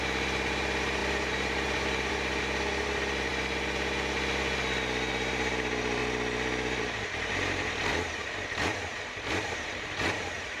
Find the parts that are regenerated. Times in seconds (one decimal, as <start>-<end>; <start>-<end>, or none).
0.0-3.3; 5.1-6.0; 6.8-8.2; 8.9-10.6